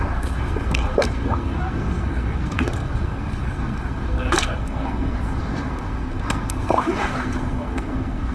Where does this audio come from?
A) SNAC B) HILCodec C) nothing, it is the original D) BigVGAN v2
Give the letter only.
A